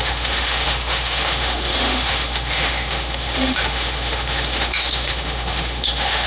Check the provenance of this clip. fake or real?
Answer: fake